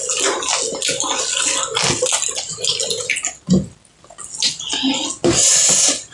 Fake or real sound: real